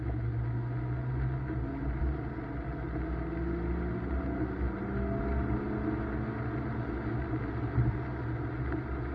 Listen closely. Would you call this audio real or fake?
real